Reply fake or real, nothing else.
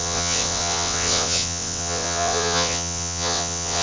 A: fake